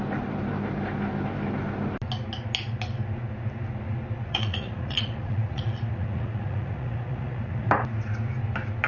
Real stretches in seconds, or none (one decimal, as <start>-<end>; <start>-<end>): 0.0-4.2; 7.7-8.9